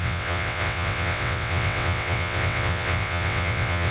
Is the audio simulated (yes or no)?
yes